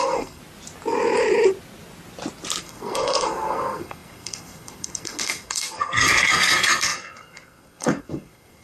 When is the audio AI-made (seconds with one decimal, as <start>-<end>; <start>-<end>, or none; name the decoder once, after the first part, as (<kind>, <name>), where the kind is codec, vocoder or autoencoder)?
0.0-0.4 (codec, SNAC); 2.6-8.6